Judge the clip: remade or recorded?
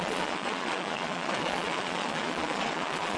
remade